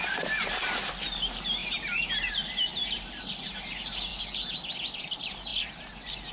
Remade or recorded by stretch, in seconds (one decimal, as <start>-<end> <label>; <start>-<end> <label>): 0.0-4.1 remade; 4.1-5.0 recorded; 5.0-5.5 remade; 5.5-6.3 recorded